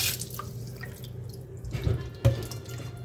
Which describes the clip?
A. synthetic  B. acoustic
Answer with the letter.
B